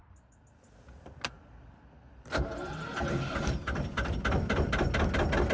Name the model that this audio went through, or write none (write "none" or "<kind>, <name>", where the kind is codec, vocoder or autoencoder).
none